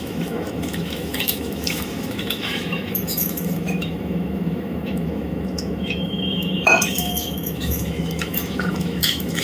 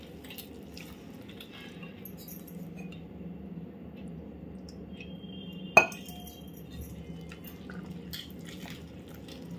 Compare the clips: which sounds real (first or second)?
second